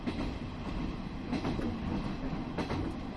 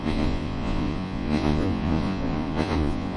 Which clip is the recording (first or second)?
first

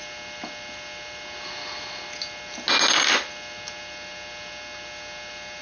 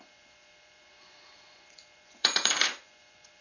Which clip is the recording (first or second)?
first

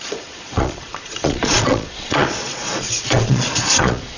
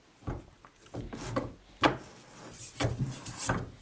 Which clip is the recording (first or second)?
second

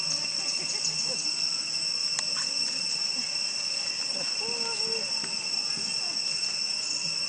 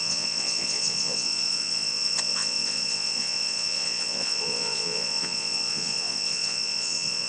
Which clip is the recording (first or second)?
first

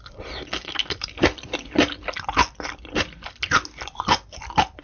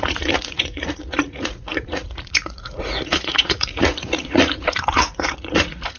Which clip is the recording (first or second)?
first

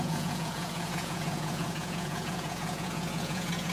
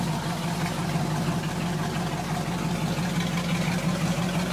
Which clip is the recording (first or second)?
second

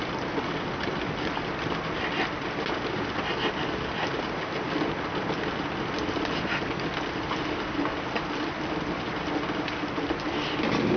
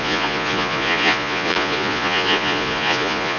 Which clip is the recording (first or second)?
first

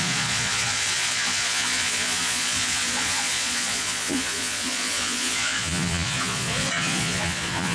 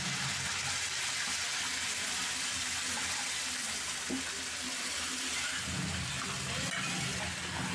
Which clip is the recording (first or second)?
second